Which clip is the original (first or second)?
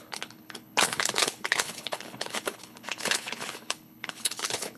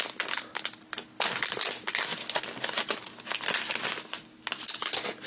second